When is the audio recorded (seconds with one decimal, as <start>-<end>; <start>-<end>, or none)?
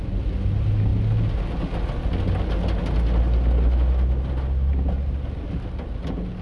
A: 0.0-6.4